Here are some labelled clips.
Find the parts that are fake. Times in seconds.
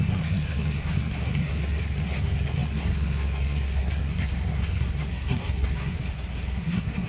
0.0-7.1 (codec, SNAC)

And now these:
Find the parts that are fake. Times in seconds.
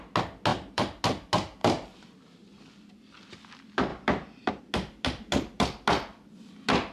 0.5-1.0 (vocoder, BigVGAN v2); 1.6-2.7; 3.9-4.6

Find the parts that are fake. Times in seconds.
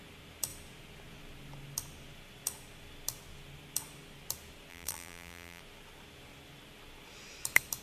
4.7-5.6 (vocoder, BigVGAN v2)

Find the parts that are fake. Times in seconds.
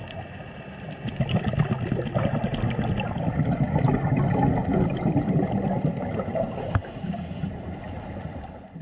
4.7-6.2 (vocoder, BigVGAN v2); 6.8-7.8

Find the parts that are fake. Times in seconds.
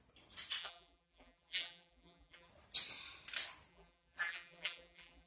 0.6-2.5 (vocoder, BigVGAN v2); 3.7-5.3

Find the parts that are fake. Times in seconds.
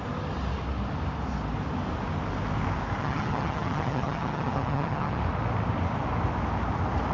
3.0-5.2 (vocoder, HiFi-GAN)